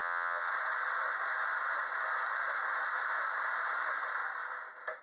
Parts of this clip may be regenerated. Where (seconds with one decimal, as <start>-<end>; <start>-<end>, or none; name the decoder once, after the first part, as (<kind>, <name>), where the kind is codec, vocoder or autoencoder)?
0.0-0.5 (vocoder, WaveNeXt)